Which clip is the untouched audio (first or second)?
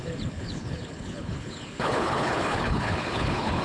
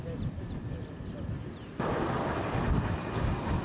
second